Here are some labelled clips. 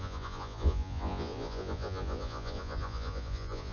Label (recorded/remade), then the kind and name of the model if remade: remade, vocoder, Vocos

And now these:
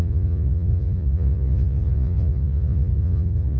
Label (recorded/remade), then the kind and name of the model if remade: remade, vocoder, Vocos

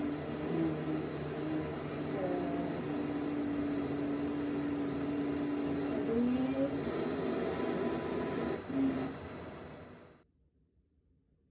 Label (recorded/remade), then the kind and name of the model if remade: recorded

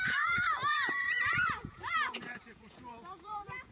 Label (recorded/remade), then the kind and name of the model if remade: remade, vocoder, Vocos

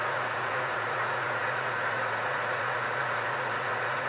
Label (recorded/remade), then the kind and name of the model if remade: remade, vocoder, Vocos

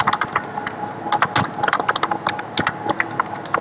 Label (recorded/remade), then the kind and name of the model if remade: recorded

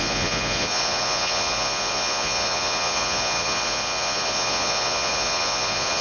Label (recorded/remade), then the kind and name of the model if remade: remade, vocoder, Vocos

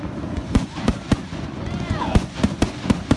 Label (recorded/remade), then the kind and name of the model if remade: remade, vocoder, Vocos